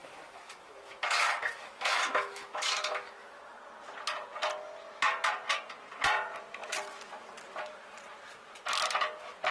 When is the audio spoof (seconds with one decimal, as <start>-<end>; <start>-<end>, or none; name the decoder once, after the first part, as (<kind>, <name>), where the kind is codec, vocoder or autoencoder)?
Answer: 0.0-3.4 (autoencoder, DAC-VAE)